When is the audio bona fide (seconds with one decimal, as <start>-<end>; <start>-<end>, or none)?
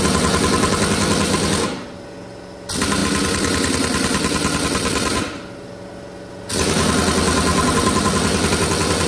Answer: 0.0-9.1